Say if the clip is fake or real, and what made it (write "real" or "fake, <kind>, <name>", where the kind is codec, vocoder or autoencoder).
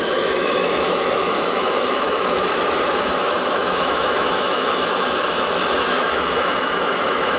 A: fake, autoencoder, DAC-VAE